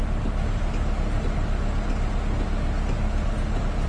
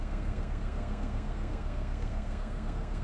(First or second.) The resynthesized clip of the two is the second